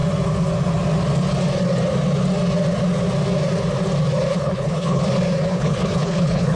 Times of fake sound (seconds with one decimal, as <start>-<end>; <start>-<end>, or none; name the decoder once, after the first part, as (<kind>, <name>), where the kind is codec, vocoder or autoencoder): 4.3-5.0 (codec, HILCodec); 5.5-6.6